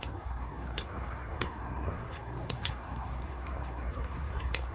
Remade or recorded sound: remade